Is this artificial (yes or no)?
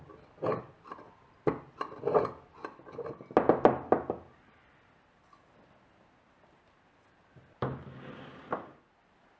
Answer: no